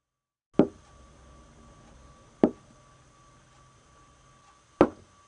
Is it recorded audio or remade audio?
recorded